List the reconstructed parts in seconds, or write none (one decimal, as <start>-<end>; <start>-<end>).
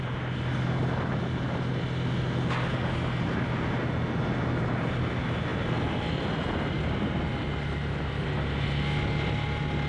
5.5-7.4